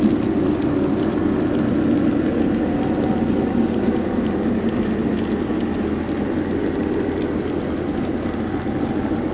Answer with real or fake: real